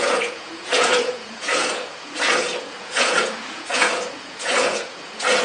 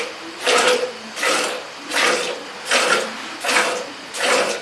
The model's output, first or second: first